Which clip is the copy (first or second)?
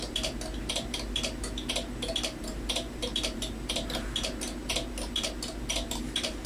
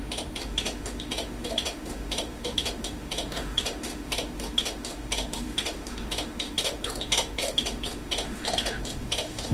second